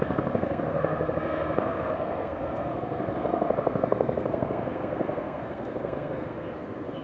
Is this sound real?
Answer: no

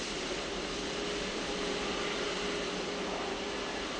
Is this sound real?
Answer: yes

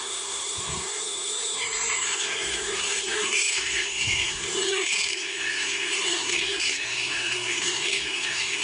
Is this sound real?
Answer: no